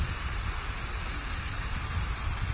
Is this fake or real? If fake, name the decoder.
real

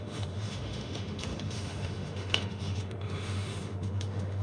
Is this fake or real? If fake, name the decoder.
fake, autoencoder, DAC-VAE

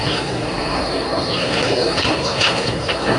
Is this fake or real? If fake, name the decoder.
fake, codec, SNAC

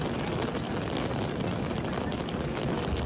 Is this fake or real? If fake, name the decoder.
real